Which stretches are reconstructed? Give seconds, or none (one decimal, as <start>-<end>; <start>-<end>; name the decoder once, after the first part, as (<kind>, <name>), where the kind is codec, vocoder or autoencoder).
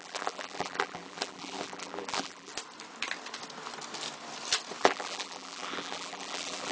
0.0-2.5 (vocoder, BigVGAN v2); 4.8-6.7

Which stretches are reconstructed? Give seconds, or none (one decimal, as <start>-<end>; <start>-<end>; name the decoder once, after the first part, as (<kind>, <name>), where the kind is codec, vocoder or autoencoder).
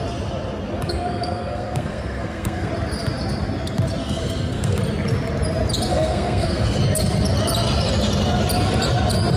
0.8-2.7 (codec, SNAC); 4.0-4.8; 5.9-6.8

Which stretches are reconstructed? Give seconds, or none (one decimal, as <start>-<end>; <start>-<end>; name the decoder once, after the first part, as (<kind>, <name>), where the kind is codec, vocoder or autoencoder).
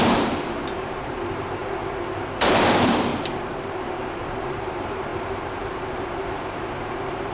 0.0-1.6 (vocoder, BigVGAN v2); 2.4-3.1; 3.8-7.3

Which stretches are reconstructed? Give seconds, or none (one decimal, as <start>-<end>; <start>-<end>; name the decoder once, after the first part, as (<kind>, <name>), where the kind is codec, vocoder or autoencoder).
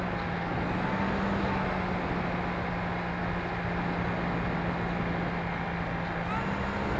none